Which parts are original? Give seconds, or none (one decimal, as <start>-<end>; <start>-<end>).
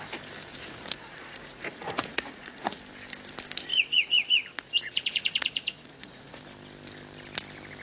0.0-0.5; 2.8-3.7; 6.4-7.8